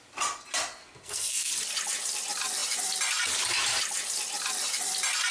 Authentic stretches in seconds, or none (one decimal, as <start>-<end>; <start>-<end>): 0.0-0.8; 1.5-5.3